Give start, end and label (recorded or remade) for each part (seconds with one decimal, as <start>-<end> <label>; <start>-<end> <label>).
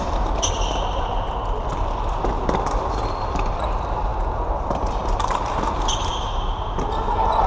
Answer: 0.0-7.5 recorded